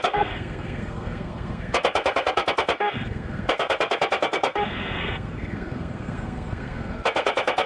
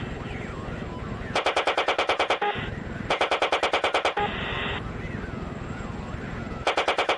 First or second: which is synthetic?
first